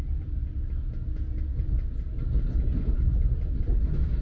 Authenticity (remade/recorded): recorded